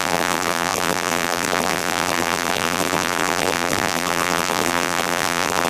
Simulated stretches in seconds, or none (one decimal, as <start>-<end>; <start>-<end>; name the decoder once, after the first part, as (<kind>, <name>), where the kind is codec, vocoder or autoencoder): 0.0-5.7 (vocoder, BigVGAN v2)